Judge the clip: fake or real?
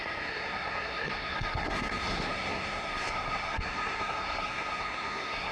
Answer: fake